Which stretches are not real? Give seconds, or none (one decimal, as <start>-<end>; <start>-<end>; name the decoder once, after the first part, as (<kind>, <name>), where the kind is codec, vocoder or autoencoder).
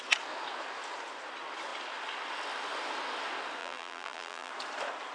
3.6-4.5 (vocoder, BigVGAN v2)